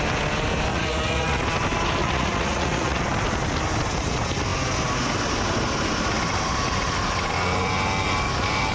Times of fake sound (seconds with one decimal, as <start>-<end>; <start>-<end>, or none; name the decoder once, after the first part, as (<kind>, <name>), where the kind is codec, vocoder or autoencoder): 0.7-1.4 (vocoder, Vocos); 2.0-3.0